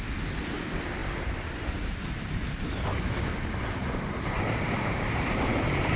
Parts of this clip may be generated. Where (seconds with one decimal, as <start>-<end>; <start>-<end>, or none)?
1.0-2.1; 3.8-6.0